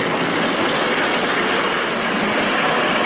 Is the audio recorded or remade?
recorded